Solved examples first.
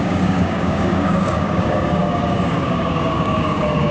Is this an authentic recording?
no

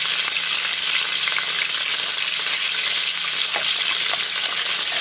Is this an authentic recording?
yes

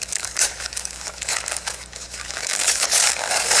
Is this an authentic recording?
no